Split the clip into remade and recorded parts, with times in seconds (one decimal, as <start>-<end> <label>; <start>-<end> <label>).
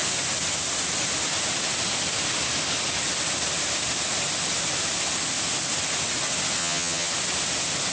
0.0-6.6 recorded; 6.6-7.1 remade; 7.1-7.9 recorded